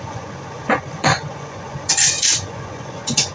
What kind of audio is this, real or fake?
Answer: fake